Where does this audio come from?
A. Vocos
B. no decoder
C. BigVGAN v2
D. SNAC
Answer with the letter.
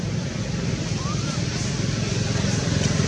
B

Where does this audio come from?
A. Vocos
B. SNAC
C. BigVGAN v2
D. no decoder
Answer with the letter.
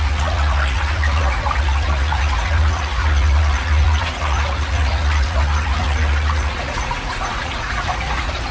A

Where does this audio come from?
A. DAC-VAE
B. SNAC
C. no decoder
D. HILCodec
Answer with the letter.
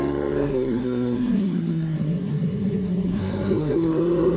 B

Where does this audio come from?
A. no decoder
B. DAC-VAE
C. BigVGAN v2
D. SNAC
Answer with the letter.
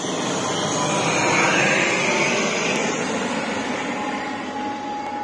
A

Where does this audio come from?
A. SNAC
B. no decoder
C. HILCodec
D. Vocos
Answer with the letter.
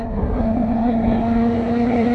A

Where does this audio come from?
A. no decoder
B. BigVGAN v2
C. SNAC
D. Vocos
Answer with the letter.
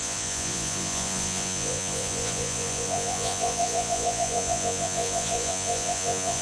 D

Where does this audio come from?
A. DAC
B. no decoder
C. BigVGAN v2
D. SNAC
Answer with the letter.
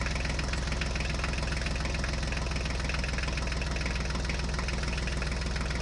B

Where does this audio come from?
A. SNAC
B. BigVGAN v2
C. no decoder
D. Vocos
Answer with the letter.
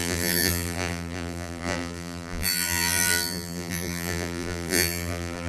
B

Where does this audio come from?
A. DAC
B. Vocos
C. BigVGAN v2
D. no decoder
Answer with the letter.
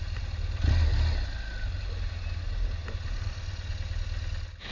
D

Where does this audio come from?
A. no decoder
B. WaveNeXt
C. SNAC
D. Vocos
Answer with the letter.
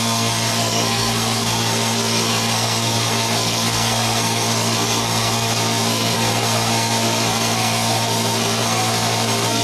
C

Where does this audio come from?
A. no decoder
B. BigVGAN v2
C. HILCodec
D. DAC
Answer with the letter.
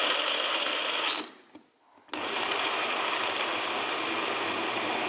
A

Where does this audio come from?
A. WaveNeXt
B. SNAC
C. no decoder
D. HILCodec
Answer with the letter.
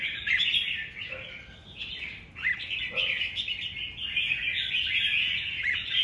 C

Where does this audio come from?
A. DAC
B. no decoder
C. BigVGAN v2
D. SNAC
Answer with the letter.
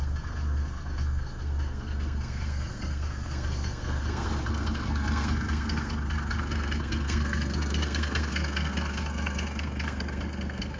D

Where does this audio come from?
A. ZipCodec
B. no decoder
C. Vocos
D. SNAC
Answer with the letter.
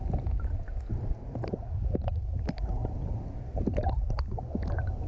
B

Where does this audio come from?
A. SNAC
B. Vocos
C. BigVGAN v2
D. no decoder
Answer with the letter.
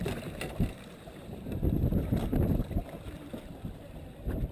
C